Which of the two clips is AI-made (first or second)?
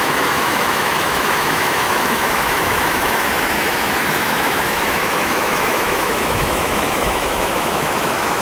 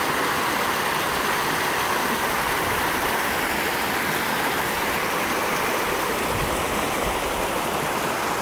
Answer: first